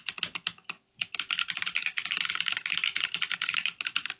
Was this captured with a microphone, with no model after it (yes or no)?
yes